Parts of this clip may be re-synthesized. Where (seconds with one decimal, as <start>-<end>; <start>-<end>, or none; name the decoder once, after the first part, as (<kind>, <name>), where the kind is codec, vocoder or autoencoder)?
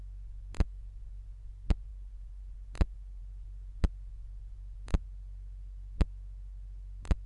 1.9-3.2 (vocoder, BigVGAN v2)